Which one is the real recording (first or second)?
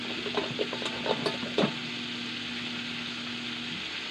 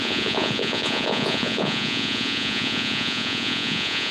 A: first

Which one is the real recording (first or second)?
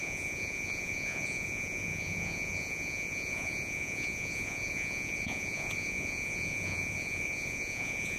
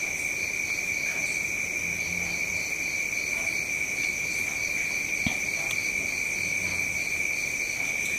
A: second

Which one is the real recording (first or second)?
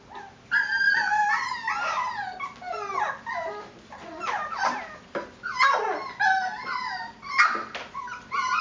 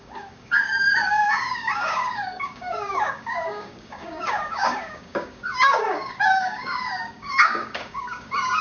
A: first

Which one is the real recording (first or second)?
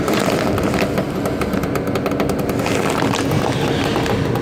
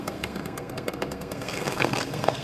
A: first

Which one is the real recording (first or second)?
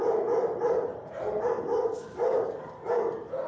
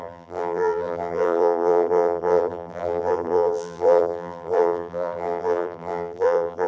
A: first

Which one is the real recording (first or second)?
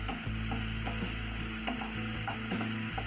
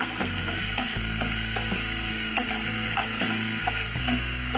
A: first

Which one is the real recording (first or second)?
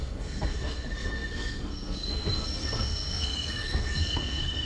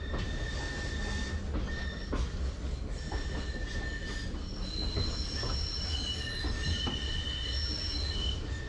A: second